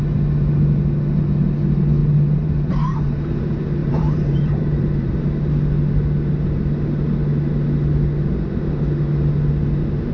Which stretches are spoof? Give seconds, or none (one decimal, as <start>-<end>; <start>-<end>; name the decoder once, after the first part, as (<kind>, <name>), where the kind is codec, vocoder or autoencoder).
2.0-3.4 (vocoder, BigVGAN v2); 3.8-5.3